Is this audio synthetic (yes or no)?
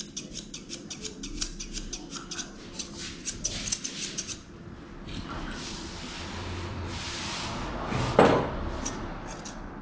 no